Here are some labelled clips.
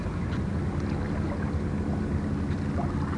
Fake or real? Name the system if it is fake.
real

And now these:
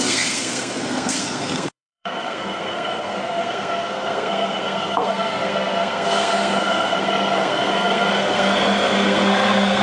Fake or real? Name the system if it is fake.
fake, codec, SNAC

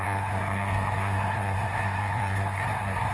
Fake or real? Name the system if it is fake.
fake, codec, SNAC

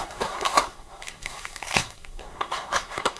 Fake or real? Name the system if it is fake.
fake, codec, SNAC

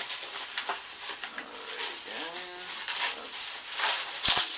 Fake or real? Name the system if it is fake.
real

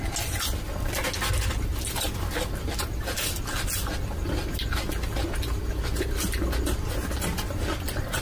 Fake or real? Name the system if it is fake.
real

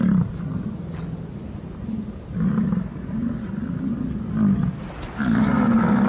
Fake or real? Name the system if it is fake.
real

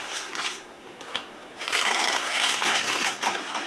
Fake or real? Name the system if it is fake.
fake, codec, SNAC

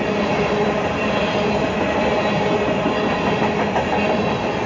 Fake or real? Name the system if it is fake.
real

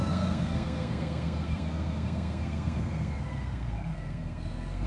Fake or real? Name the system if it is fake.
fake, codec, SNAC